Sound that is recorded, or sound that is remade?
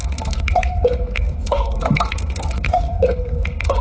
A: remade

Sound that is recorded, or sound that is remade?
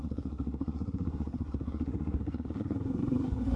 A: remade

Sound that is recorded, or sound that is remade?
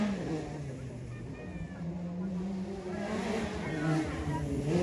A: recorded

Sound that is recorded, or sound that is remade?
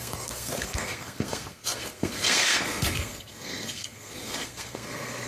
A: remade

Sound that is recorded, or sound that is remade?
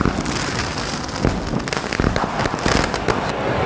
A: recorded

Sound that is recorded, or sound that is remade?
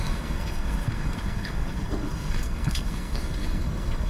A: remade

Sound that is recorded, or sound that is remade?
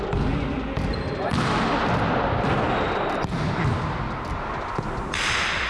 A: recorded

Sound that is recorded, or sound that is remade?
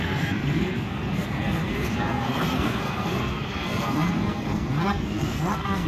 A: remade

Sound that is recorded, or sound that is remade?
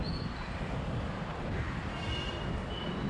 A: recorded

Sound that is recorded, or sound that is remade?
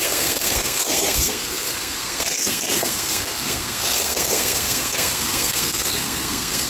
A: remade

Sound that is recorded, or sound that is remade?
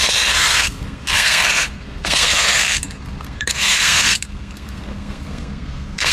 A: remade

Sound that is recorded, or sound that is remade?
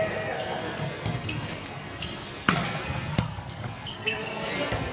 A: remade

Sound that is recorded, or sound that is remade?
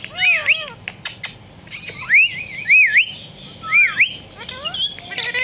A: recorded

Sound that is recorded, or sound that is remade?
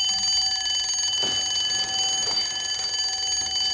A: recorded